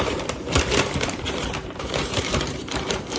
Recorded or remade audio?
remade